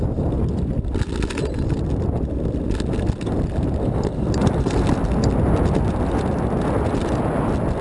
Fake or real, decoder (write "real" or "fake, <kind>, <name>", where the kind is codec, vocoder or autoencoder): real